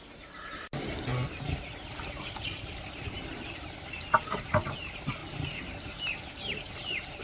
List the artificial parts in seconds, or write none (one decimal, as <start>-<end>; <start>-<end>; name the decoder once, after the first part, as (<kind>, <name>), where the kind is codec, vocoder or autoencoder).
0.0-1.1 (vocoder, BigVGAN v2); 2.0-7.2